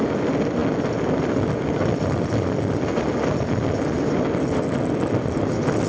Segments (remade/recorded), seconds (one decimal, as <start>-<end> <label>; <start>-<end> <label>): 0.0-5.9 recorded